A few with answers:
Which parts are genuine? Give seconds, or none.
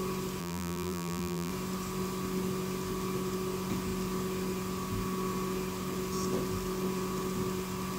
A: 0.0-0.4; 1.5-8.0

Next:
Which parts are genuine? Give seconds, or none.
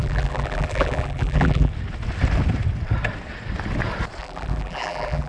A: 1.7-4.2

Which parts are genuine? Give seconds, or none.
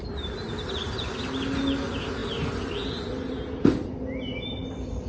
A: 0.0-5.1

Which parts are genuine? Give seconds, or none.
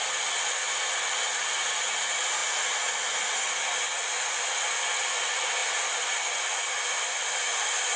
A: 0.0-8.0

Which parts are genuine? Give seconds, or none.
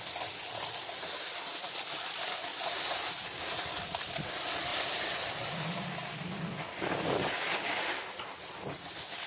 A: 0.0-2.5; 4.3-9.3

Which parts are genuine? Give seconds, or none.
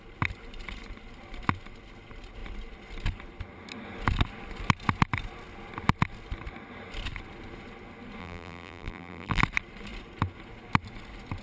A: 0.0-8.2; 9.4-11.4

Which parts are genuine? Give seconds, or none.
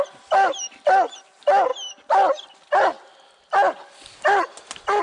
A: 0.0-5.0